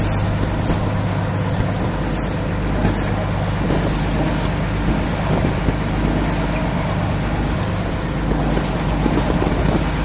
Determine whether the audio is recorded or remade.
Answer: recorded